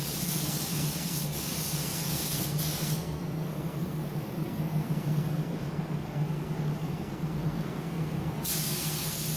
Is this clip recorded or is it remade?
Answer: remade